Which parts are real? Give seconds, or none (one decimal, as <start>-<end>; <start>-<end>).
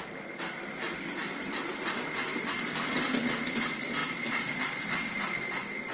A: 0.0-1.2; 1.7-4.0; 4.5-5.9